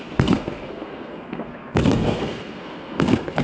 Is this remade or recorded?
remade